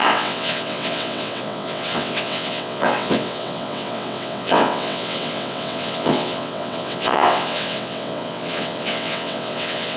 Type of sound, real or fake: fake